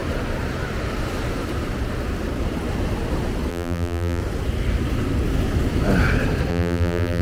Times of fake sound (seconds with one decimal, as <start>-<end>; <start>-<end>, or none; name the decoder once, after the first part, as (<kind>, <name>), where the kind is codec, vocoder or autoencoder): 3.5-4.2 (vocoder, BigVGAN v2); 6.5-7.2